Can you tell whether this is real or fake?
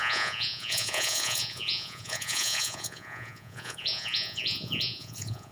fake